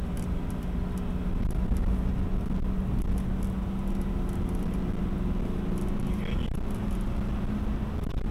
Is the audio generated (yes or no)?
no